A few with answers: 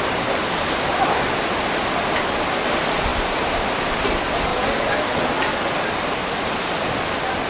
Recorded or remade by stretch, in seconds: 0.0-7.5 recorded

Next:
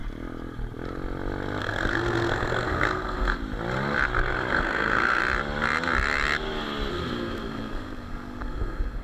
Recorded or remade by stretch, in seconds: 0.0-1.6 recorded; 1.6-3.4 remade; 3.4-4.5 recorded; 4.5-5.2 remade; 5.2-6.9 recorded; 6.9-9.0 remade

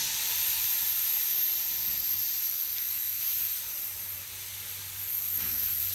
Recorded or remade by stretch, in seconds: 0.0-2.5 recorded; 2.5-3.2 remade; 3.2-5.1 recorded; 5.1-5.9 remade

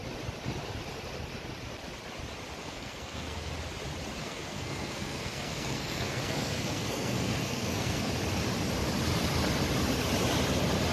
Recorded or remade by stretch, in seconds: 0.0-2.6 recorded; 2.6-3.5 remade; 3.5-4.2 recorded; 4.2-8.1 remade; 8.1-10.9 recorded

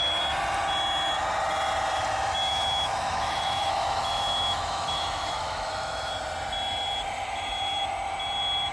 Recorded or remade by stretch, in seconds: 0.0-2.5 recorded; 2.5-6.1 remade; 6.1-8.7 recorded

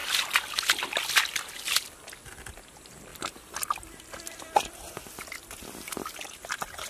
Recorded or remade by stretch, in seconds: 0.0-6.9 recorded